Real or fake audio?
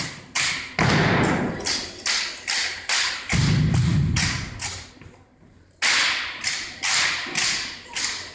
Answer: real